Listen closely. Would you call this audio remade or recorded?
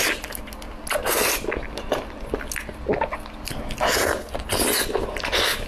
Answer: recorded